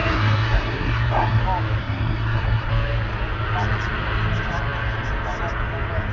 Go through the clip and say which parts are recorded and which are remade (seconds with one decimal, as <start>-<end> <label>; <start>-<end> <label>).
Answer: 0.0-1.4 remade; 1.4-1.8 recorded; 1.8-2.7 remade; 2.7-6.1 recorded